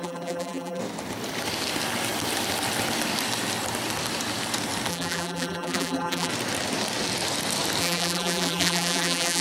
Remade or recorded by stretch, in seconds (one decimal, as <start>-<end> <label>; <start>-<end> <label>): 0.0-0.8 remade; 0.8-4.9 recorded; 4.9-6.3 remade; 6.3-7.8 recorded; 7.8-9.4 remade